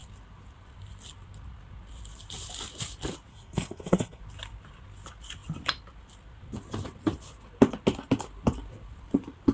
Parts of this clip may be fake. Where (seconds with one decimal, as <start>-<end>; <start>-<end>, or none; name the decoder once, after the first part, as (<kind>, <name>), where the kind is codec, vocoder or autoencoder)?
3.3-4.2 (codec, SNAC)

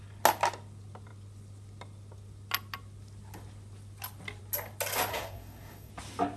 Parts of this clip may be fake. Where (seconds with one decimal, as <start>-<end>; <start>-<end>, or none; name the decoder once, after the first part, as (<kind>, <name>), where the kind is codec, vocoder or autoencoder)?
5.1-5.9 (codec, SNAC)

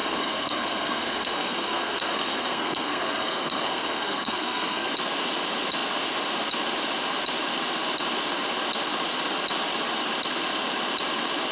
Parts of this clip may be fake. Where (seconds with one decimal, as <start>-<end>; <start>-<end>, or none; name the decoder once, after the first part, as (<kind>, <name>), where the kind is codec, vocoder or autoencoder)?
0.0-4.9 (codec, SNAC)